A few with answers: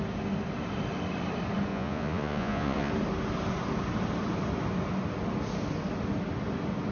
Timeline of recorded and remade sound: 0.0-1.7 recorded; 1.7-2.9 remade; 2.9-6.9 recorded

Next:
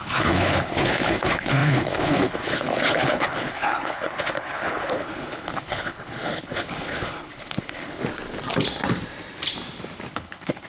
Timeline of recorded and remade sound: 0.0-8.0 remade; 8.0-10.1 recorded; 10.1-10.7 remade

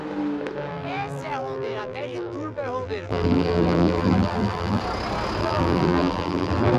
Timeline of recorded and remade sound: 0.0-0.7 recorded; 0.7-4.8 remade; 4.8-5.4 recorded; 5.4-6.8 remade